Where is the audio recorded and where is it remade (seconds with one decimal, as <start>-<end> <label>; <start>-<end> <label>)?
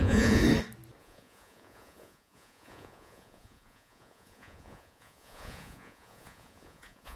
0.0-0.4 remade; 0.4-1.0 recorded; 1.0-7.2 remade